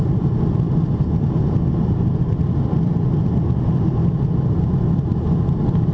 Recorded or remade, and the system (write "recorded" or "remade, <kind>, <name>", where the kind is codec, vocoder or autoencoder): recorded